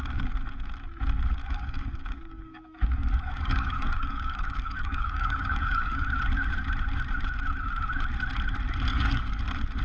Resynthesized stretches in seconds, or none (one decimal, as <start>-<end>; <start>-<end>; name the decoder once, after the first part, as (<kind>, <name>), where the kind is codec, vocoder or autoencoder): 1.4-6.1 (codec, DAC); 8.9-9.4